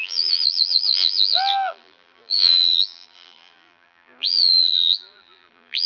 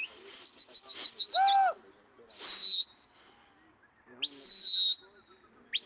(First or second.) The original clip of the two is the second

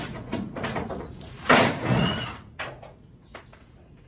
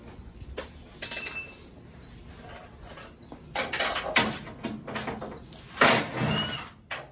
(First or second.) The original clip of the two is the second